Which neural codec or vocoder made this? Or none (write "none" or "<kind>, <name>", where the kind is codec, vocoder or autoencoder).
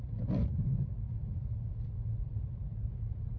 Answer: none